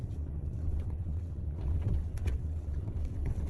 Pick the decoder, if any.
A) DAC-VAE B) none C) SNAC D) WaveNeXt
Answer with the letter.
D